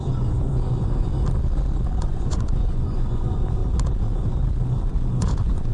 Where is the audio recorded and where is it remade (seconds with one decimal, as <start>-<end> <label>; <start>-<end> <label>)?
0.0-1.1 remade; 1.1-2.0 recorded; 2.0-3.6 remade; 3.6-5.2 recorded; 5.2-5.7 remade